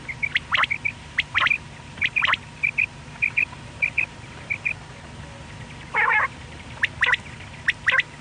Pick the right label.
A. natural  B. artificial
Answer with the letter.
A